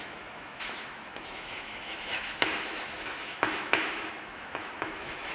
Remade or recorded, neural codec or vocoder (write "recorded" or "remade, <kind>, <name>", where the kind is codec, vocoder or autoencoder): remade, autoencoder, DAC-VAE